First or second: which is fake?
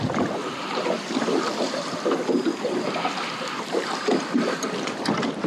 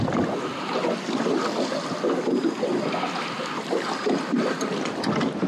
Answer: first